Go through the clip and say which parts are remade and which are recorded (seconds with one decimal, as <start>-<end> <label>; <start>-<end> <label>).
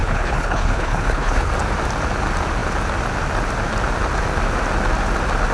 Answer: 0.0-1.5 remade; 1.5-5.5 recorded